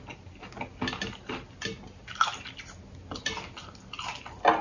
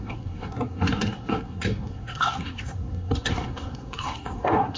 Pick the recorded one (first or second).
first